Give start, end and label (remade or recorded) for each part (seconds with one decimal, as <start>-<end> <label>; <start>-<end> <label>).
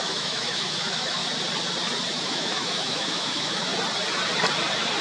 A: 0.0-1.2 remade; 1.2-2.3 recorded; 2.3-3.7 remade; 3.7-5.0 recorded